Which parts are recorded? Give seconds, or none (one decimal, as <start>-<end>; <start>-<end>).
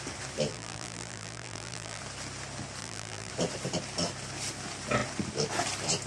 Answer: 0.0-0.5; 2.0-2.8; 3.3-6.1